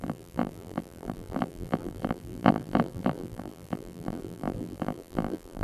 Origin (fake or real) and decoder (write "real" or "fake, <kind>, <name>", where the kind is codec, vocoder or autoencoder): fake, vocoder, BigVGAN v2